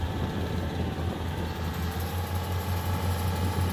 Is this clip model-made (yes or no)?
no